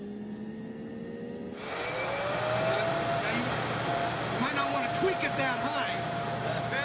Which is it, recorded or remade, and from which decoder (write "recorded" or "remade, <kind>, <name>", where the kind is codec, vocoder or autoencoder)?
recorded